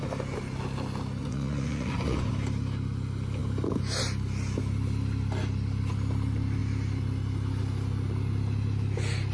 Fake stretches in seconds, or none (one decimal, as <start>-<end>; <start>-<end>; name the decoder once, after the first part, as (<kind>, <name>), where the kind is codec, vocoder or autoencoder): 1.2-2.3 (vocoder, Vocos)